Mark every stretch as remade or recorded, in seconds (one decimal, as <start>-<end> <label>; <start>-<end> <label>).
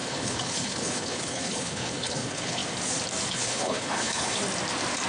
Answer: 0.0-2.6 remade; 2.6-3.3 recorded; 3.3-4.4 remade; 4.4-5.1 recorded